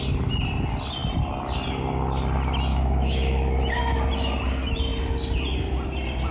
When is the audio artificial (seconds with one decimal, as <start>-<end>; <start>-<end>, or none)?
2.7-4.0